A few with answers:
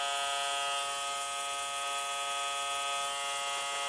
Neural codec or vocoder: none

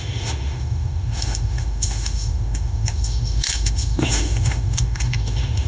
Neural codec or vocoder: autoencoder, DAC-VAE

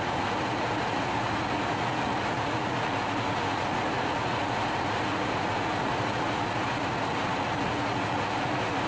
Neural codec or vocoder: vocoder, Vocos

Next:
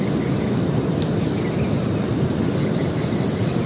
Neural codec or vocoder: none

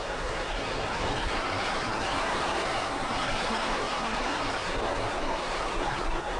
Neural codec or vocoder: codec, SNAC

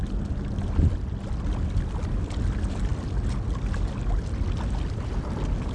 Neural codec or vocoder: none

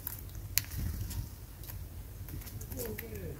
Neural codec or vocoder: none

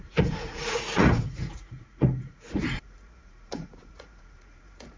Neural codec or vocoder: vocoder, Vocos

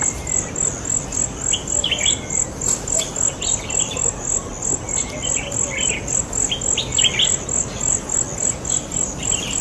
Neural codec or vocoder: none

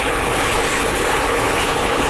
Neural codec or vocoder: codec, HILCodec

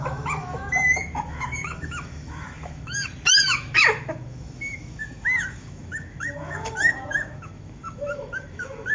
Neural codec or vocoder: autoencoder, DAC-VAE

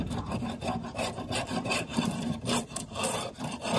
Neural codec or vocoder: vocoder, BigVGAN v2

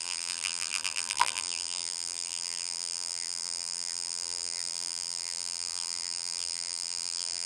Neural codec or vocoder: vocoder, BigVGAN v2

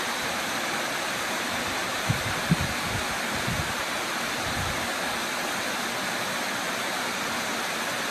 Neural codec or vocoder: vocoder, BigVGAN v2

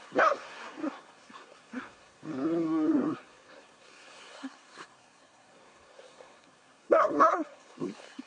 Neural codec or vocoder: codec, SNAC